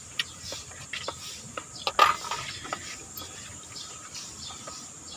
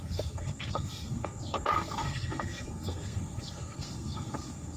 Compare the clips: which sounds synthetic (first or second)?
second